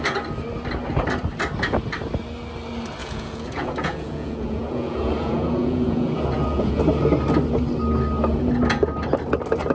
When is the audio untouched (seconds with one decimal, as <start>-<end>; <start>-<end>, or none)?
0.0-3.0; 6.8-9.7